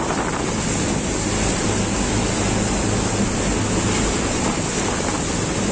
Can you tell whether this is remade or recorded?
recorded